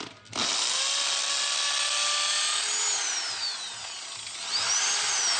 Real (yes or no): yes